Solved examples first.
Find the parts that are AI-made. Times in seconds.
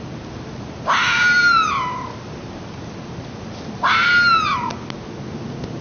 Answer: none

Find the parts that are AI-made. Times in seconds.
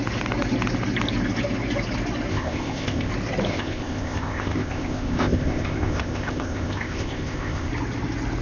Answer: 2.3-3.1; 3.5-7.7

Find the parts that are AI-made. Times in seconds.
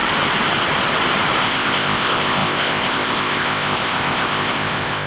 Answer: 1.4-5.1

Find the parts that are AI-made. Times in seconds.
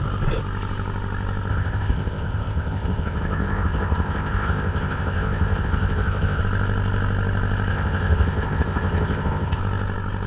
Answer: 1.5-6.4; 7.7-9.6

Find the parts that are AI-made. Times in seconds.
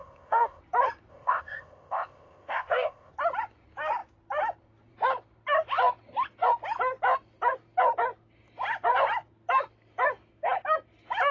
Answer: 0.0-0.6; 1.1-3.1